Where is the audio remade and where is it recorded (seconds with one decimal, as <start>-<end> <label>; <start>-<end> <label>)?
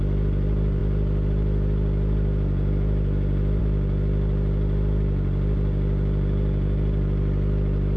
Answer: 0.0-8.0 recorded